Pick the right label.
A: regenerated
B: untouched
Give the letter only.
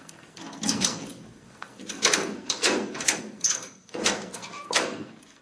A